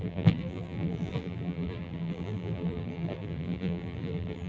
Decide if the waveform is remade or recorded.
remade